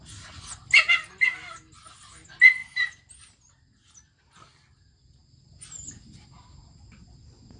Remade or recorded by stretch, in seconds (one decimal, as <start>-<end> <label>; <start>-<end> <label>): 0.0-7.6 recorded